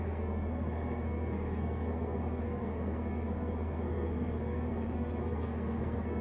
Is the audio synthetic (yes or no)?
yes